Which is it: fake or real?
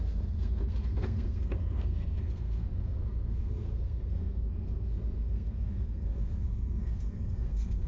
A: fake